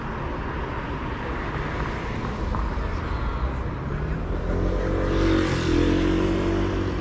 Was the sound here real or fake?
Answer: real